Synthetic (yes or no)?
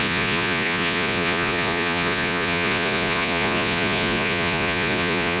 yes